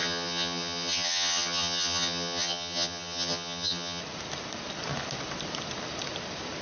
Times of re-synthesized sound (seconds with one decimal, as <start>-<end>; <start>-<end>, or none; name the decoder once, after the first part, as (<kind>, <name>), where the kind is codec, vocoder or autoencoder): 0.0-4.0 (vocoder, HiFi-GAN)